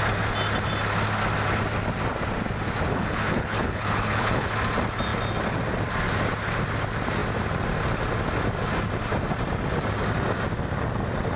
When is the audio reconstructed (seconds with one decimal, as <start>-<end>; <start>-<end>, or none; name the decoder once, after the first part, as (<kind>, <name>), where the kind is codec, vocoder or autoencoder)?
2.9-4.5 (codec, HILCodec)